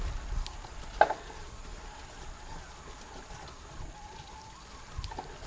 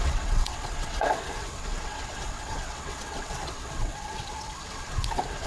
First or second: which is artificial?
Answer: second